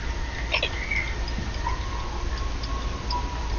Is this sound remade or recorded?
recorded